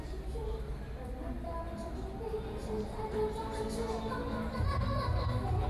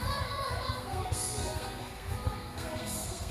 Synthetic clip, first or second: second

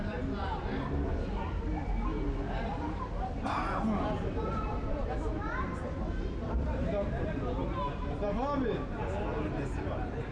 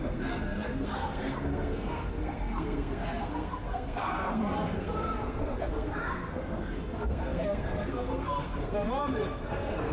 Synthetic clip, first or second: second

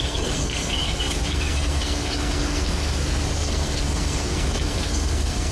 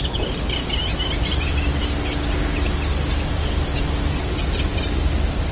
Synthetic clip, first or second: first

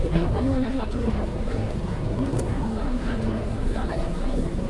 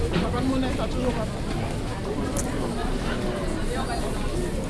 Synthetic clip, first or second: first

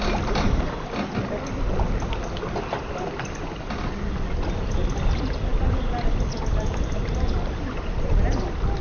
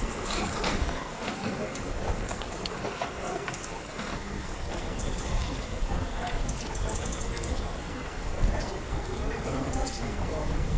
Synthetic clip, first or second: second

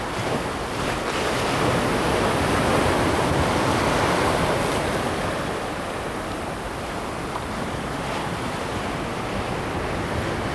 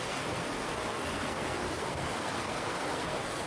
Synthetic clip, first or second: second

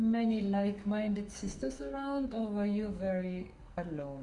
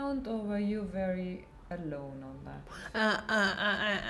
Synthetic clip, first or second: first